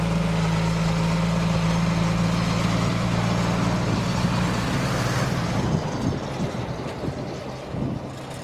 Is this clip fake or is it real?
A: real